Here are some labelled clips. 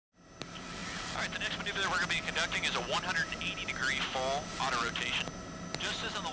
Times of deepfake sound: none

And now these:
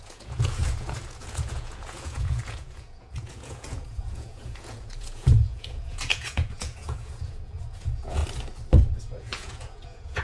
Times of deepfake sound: 0.0-8.2; 9.0-10.2

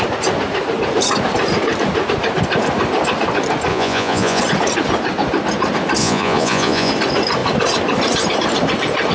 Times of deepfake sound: 3.7-4.4; 6.0-6.9

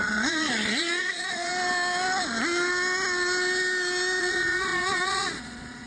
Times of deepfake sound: 0.0-1.5; 4.2-5.9

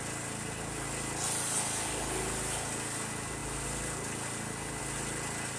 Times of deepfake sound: none

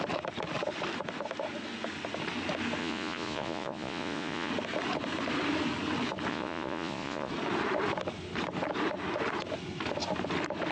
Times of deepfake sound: 2.8-4.5; 6.3-7.3